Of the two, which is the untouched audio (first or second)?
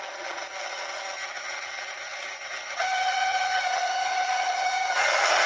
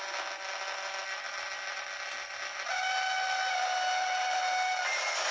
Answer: second